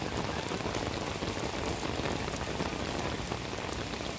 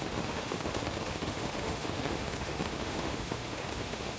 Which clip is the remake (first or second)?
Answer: second